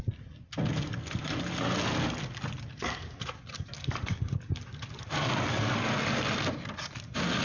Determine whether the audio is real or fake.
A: real